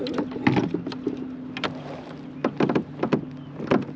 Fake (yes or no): no